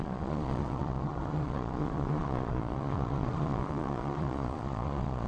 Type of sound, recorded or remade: remade